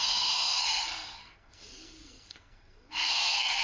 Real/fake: fake